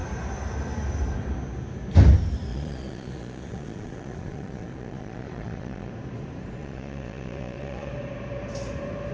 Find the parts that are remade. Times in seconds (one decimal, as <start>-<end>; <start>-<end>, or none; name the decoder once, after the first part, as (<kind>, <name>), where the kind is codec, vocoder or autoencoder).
2.5-5.9 (vocoder, Vocos); 6.6-7.9

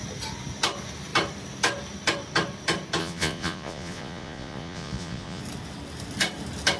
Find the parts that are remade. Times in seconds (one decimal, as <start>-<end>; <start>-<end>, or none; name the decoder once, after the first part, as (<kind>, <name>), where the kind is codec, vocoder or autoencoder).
3.0-5.4 (vocoder, Vocos)

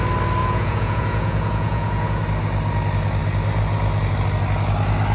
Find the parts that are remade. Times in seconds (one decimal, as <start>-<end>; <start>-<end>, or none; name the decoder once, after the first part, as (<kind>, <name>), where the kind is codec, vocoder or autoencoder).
0.4-2.2 (vocoder, Vocos)

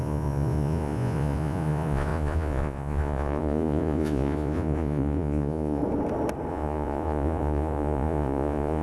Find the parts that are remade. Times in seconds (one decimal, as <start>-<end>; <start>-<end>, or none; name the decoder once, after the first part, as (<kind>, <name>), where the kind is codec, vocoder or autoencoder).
0.0-5.8 (vocoder, Vocos); 6.5-8.8

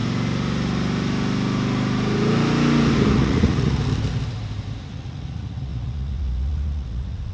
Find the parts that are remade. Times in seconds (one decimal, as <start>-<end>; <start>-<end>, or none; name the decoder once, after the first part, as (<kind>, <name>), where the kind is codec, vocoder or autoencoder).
3.1-3.8 (vocoder, Vocos); 4.9-7.3

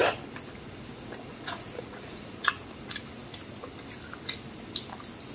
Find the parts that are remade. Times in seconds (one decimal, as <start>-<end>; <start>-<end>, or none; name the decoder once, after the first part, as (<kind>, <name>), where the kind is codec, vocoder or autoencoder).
1.3-2.5 (vocoder, Vocos)

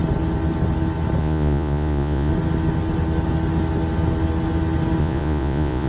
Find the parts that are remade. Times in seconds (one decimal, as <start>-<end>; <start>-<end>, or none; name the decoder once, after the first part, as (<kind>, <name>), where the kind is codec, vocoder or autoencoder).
1.2-2.3 (vocoder, Vocos); 5.0-5.9